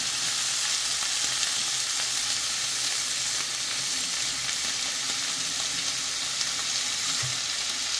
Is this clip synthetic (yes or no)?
no